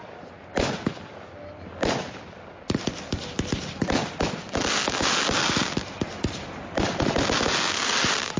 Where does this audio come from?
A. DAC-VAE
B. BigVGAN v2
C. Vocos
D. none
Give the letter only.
D